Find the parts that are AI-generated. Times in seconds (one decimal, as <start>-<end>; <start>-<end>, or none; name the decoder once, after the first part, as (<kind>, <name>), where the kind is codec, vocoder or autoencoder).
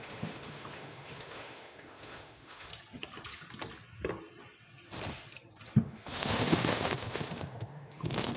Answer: 0.0-2.7 (autoencoder, DAC-VAE); 5.8-8.4